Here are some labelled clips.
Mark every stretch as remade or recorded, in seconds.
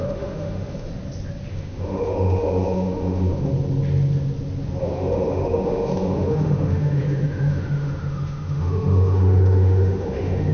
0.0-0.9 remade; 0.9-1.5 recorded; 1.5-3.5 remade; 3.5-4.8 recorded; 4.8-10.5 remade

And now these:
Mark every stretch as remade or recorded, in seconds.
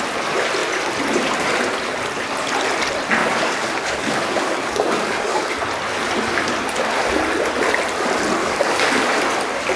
0.0-3.2 recorded; 3.2-5.5 remade; 5.5-8.4 recorded; 8.4-9.2 remade; 9.2-9.8 recorded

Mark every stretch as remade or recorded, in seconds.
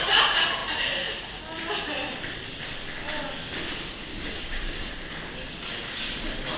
0.0-4.1 recorded; 4.1-4.9 remade; 4.9-6.6 recorded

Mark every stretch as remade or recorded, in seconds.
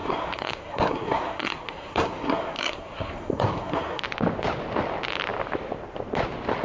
0.0-4.0 remade; 4.0-6.6 recorded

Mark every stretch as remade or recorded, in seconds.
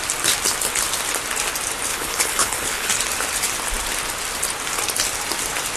0.0-1.9 recorded; 1.9-2.9 remade; 2.9-5.8 recorded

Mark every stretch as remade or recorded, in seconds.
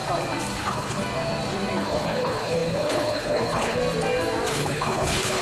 0.0-0.6 recorded; 0.6-1.0 remade; 1.0-1.8 recorded; 1.8-3.8 remade; 3.8-4.5 recorded; 4.5-5.4 remade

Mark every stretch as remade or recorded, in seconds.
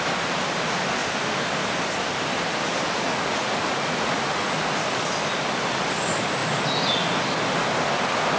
0.0-3.1 recorded; 3.1-4.6 remade; 4.6-8.4 recorded